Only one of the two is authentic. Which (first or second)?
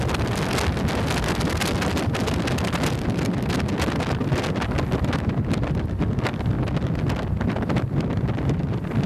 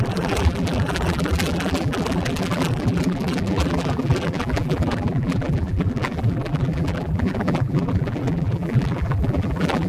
first